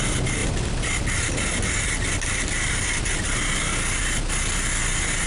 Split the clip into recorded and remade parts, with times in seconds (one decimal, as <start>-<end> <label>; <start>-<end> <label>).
0.0-0.4 recorded; 0.4-3.6 remade; 3.6-5.3 recorded